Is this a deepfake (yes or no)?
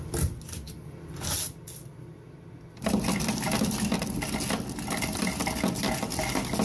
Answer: no